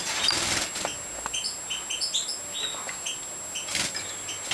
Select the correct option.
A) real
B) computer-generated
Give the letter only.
A